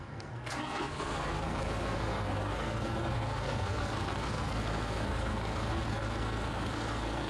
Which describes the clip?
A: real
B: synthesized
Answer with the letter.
B